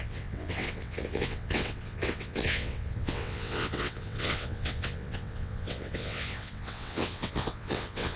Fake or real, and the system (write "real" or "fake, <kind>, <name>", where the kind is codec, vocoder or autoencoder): fake, vocoder, WaveNeXt